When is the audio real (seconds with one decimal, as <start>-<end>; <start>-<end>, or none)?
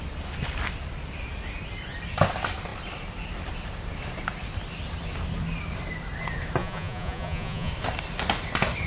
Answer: 0.0-6.6; 7.7-8.9